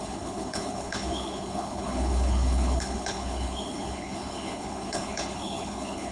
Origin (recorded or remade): remade